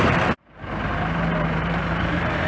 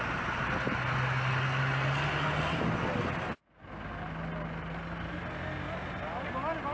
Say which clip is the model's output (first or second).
first